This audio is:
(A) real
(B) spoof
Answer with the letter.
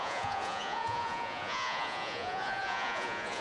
B